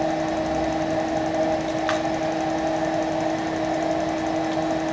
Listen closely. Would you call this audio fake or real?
real